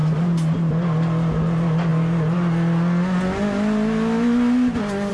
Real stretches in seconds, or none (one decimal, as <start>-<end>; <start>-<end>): 0.0-5.1